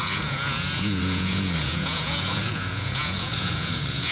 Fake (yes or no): yes